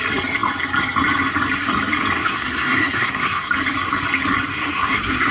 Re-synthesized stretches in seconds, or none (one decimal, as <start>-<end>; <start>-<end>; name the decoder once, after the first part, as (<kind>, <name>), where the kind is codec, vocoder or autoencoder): 2.2-3.5 (codec, SNAC); 4.5-5.3